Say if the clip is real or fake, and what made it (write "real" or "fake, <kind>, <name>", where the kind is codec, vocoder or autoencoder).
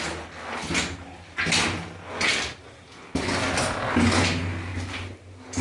real